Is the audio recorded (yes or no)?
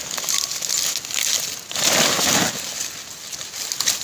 yes